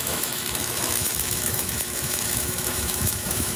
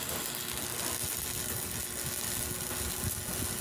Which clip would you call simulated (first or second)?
first